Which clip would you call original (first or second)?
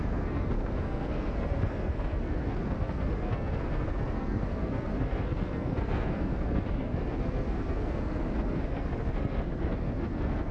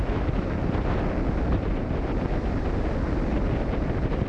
second